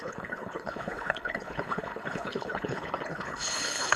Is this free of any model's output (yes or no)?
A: no